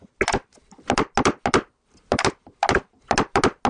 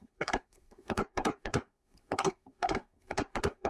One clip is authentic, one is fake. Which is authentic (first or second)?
first